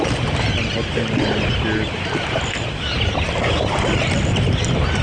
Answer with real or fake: real